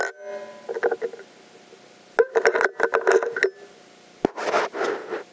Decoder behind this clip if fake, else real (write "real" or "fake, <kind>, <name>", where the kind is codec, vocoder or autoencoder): real